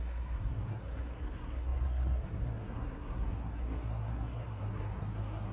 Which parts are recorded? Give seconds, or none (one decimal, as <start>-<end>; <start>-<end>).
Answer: none